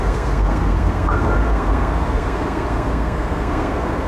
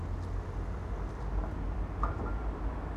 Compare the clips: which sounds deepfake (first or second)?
first